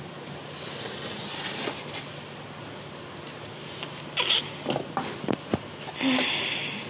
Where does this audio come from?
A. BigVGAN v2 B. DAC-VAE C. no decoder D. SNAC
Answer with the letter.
C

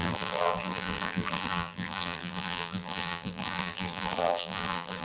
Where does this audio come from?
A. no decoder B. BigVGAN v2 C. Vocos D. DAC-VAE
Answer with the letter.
B